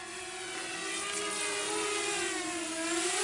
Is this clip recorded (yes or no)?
yes